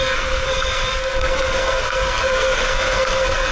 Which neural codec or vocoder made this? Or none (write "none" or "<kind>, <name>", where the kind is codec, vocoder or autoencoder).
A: codec, SNAC